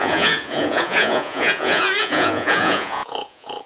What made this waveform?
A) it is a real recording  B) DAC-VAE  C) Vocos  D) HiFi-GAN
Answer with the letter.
C